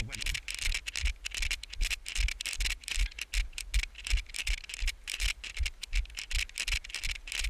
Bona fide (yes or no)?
yes